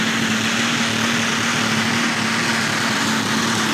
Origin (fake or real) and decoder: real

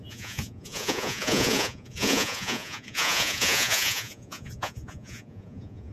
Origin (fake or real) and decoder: fake, vocoder, Vocos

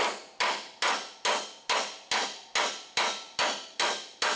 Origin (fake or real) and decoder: real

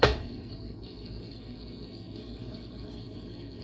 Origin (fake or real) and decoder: fake, codec, SNAC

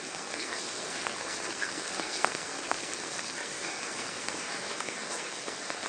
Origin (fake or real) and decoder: fake, codec, SNAC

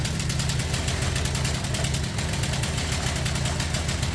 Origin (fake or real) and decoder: real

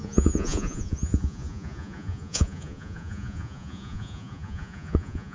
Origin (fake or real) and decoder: fake, vocoder, Vocos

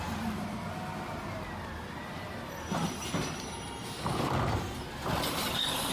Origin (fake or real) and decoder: real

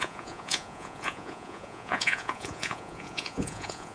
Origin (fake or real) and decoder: fake, vocoder, Vocos